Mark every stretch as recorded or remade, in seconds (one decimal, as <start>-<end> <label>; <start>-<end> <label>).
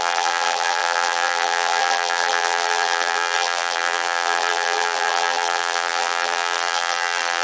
0.0-7.4 remade